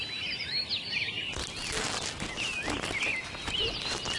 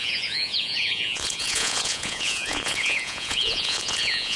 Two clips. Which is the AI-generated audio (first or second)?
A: second